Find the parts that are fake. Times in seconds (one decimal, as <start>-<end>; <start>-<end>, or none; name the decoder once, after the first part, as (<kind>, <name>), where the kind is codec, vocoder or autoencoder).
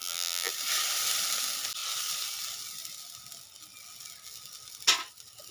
0.0-0.5 (vocoder, BigVGAN v2)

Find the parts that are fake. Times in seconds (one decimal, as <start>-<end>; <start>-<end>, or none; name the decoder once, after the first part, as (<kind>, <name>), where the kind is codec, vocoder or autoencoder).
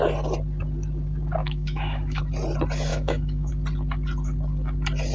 1.4-2.2 (autoencoder, DAC-VAE); 2.9-3.5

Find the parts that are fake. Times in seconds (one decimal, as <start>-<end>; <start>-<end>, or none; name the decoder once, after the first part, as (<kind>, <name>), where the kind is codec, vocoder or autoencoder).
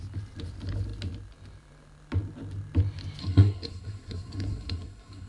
3.2-5.3 (codec, SNAC)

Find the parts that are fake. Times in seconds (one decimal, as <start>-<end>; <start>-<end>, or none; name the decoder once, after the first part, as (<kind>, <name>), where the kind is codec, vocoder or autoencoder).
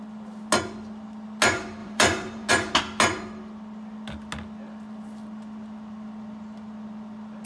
1.8-2.5 (vocoder, BigVGAN v2)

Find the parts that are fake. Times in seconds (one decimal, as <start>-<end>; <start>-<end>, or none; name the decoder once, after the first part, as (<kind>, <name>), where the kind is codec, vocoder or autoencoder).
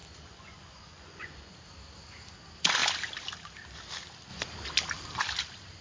0.0-1.5 (vocoder, Vocos)